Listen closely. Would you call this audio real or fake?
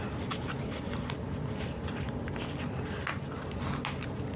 real